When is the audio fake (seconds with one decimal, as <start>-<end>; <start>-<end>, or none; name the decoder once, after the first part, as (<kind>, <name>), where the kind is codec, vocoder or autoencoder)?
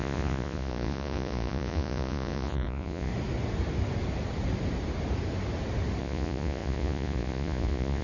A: 0.0-3.1 (vocoder, Vocos); 6.0-8.0